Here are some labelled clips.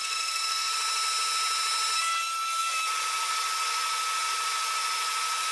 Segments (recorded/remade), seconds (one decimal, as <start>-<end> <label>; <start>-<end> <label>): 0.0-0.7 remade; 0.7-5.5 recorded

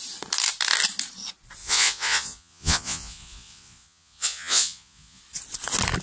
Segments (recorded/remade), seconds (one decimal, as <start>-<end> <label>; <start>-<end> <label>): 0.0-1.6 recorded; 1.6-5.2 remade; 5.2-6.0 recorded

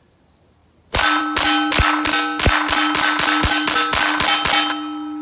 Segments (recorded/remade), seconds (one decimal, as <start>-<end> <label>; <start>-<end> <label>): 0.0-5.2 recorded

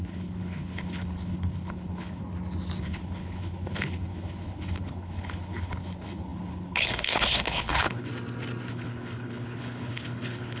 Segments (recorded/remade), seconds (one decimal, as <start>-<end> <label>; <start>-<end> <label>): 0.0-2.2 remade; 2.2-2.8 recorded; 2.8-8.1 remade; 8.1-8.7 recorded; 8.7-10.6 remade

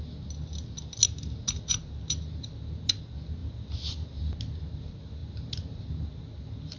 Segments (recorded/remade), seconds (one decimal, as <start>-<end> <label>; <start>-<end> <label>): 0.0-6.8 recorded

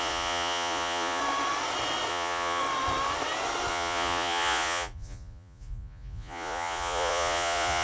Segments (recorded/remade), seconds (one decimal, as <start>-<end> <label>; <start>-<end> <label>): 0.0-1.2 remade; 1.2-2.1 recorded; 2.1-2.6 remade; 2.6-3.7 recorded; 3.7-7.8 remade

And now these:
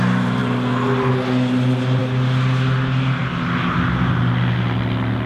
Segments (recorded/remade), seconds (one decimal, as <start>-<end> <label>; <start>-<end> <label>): 0.0-5.3 recorded

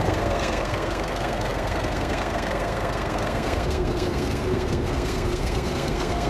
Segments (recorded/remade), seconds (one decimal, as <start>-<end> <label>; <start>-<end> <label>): 0.0-6.3 remade